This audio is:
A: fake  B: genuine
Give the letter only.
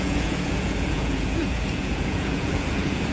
A